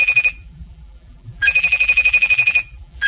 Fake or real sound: fake